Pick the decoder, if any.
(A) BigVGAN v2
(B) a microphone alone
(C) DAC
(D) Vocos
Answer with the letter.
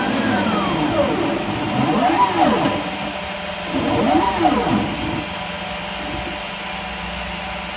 B